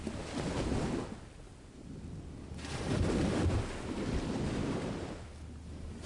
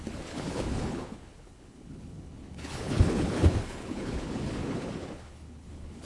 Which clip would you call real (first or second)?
first